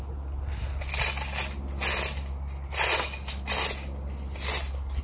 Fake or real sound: real